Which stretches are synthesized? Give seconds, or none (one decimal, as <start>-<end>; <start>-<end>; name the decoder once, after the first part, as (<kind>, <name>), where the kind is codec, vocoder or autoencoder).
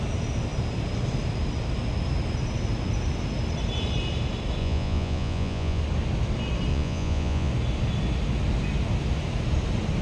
4.6-5.8 (vocoder, Vocos); 6.7-7.5